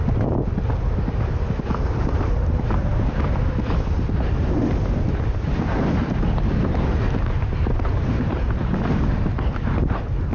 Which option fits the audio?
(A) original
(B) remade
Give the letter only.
A